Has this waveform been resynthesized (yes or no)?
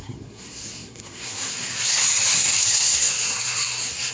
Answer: yes